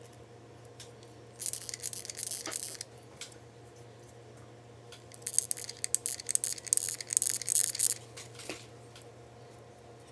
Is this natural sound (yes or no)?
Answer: yes